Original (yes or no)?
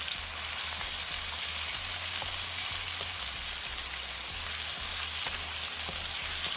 yes